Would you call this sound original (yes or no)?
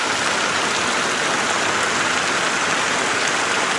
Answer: yes